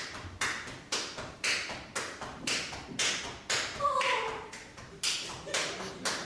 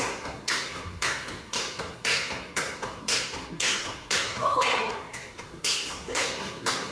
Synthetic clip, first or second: second